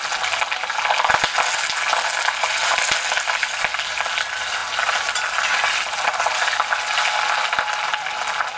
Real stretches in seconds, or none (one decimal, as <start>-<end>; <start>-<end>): 0.0-8.6